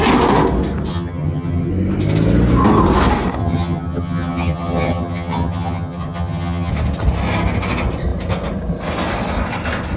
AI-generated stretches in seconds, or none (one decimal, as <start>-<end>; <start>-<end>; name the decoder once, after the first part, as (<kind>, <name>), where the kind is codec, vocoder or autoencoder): 0.9-1.7 (vocoder, HiFi-GAN); 3.4-6.7